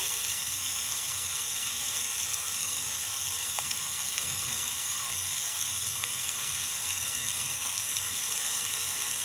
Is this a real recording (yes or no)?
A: no